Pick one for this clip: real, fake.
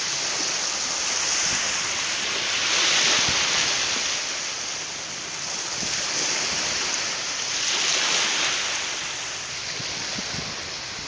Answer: real